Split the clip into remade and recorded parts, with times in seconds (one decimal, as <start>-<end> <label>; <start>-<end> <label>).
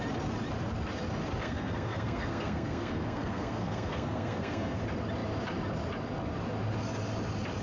0.0-1.4 recorded; 1.4-4.8 remade; 4.8-7.6 recorded